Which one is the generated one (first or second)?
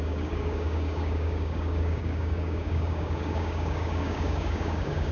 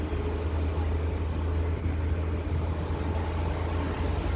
first